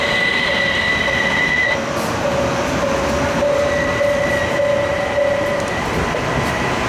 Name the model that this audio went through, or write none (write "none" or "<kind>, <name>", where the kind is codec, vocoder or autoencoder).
none